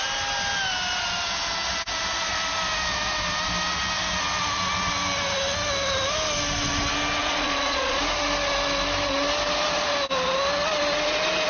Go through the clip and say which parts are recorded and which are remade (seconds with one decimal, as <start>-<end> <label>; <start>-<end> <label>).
0.0-7.2 recorded; 7.2-8.0 remade; 8.0-11.5 recorded